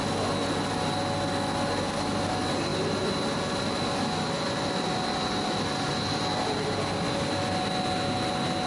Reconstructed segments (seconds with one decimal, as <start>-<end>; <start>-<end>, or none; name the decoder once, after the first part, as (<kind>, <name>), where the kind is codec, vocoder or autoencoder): none